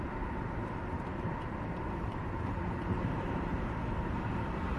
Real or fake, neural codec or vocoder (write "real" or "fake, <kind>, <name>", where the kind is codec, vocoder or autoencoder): fake, vocoder, BigVGAN v2